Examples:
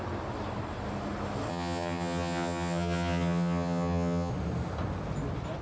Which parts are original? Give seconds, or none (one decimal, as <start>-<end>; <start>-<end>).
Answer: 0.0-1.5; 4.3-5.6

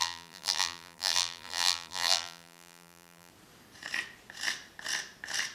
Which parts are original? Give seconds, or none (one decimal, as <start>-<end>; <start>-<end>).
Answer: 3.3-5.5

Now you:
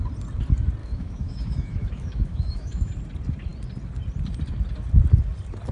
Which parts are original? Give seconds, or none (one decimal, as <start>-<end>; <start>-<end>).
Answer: 0.0-0.8; 2.9-5.7

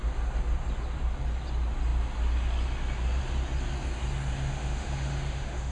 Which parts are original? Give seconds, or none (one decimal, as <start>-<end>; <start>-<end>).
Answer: 0.0-4.3

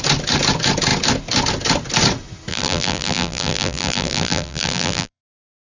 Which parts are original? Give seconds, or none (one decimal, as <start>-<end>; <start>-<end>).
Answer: 0.0-2.5; 5.2-5.8

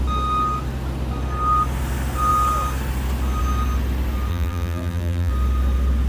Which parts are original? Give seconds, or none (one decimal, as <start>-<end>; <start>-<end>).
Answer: 0.0-4.3; 5.3-6.1